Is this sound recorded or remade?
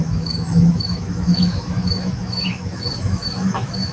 remade